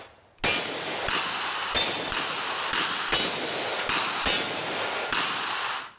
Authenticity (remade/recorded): recorded